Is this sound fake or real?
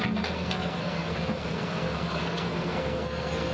fake